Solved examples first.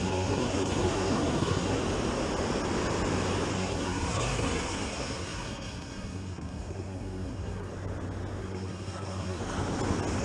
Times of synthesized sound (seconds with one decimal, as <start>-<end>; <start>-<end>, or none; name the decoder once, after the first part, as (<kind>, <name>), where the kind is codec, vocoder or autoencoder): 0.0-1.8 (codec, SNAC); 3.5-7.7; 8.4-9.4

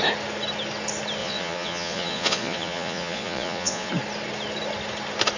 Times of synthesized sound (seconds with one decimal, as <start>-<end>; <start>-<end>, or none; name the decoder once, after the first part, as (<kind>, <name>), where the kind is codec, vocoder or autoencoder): 1.2-3.9 (vocoder, Vocos)

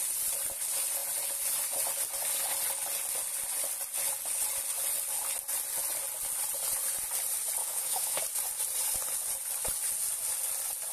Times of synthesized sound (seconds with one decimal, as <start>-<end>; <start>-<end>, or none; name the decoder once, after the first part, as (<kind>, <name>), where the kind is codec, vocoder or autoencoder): 7.6-8.2 (autoencoder, DAC-VAE)